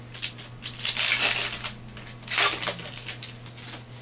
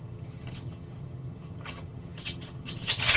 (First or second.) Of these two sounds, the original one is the first